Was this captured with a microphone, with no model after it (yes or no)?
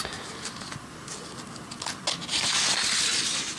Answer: yes